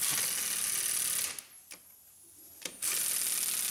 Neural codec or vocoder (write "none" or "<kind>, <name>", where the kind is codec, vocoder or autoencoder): none